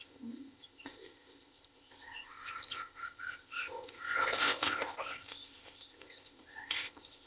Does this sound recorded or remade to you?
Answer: remade